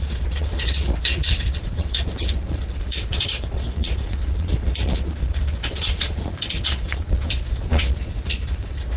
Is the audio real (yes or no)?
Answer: no